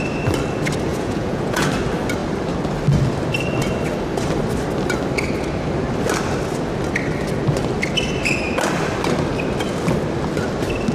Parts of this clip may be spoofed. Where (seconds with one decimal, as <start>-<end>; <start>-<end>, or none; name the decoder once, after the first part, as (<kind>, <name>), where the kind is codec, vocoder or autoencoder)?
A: 0.9-1.7 (vocoder, Vocos)